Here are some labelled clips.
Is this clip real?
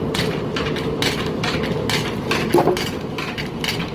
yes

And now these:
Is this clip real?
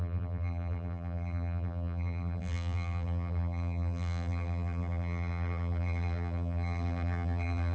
no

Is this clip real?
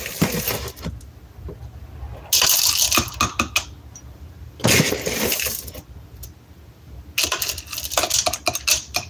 yes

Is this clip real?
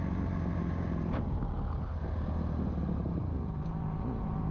yes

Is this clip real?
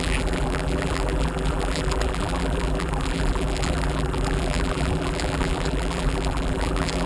no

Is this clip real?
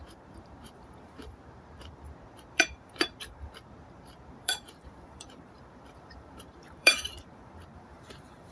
no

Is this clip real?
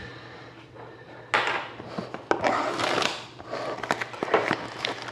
yes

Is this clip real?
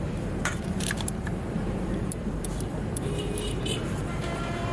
no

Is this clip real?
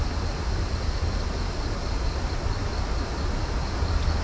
yes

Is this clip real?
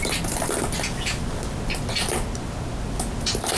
yes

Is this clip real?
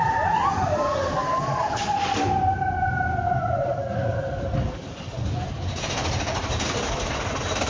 yes